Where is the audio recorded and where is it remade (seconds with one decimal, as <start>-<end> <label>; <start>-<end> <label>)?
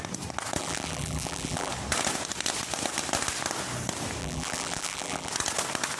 0.0-0.6 recorded; 0.6-1.7 remade; 1.7-4.2 recorded; 4.2-5.3 remade; 5.3-6.0 recorded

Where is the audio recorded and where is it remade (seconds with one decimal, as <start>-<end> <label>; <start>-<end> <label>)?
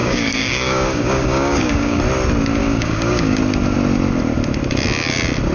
0.0-2.0 remade; 2.0-2.6 recorded; 2.6-3.4 remade; 3.4-5.5 recorded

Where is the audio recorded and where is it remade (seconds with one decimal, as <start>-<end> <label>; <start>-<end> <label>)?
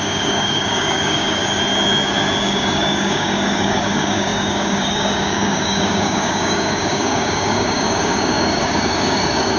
0.0-1.4 remade; 1.4-2.4 recorded; 2.4-9.6 remade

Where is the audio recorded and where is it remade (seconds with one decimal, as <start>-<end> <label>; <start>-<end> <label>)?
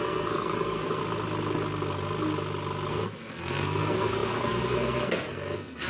0.0-1.0 remade; 1.0-2.9 recorded; 2.9-5.9 remade